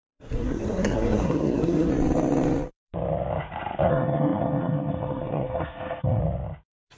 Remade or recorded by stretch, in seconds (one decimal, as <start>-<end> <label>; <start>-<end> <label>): 0.0-1.9 remade; 1.9-3.9 recorded; 3.9-6.2 remade; 6.2-7.0 recorded